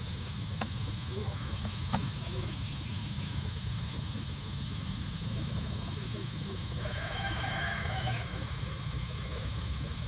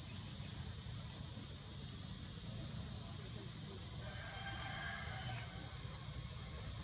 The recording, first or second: second